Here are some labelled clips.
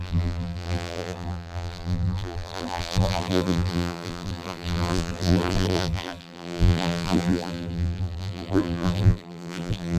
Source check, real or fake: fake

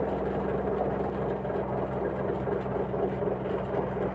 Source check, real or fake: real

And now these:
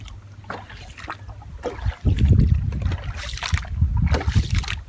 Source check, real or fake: real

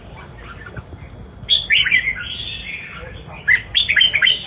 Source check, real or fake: real